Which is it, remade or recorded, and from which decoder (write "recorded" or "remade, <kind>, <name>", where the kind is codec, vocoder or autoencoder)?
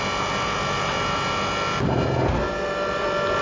recorded